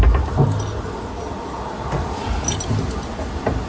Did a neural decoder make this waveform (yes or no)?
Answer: no